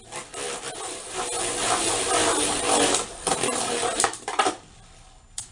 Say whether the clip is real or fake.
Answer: real